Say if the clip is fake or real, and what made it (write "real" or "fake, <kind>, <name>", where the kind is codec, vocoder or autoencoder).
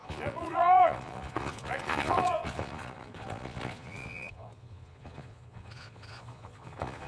fake, vocoder, Vocos